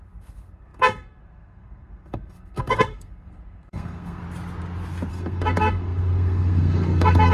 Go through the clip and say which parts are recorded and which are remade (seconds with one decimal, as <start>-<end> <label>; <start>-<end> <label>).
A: 0.0-4.2 remade; 4.2-5.1 recorded; 5.1-7.3 remade